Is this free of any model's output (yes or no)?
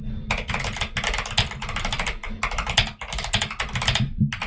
yes